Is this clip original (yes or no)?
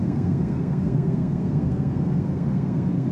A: no